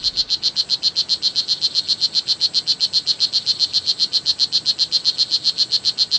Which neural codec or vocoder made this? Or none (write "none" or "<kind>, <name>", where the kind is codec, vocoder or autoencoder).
none